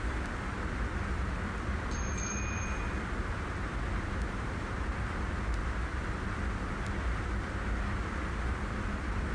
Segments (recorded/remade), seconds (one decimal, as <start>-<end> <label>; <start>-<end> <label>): 0.0-9.3 remade